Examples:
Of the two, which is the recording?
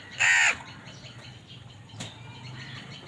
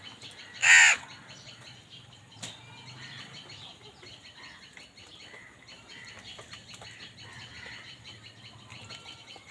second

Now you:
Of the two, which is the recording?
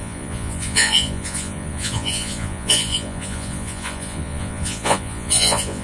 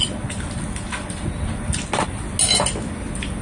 second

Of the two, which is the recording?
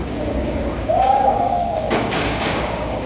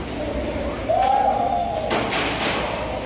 second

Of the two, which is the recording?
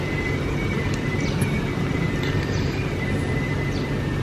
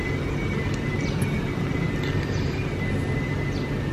second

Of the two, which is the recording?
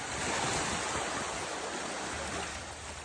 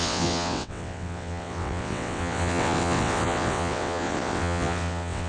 first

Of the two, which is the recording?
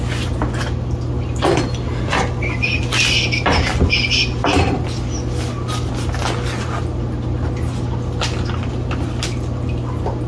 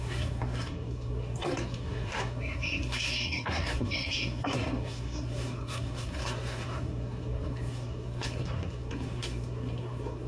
first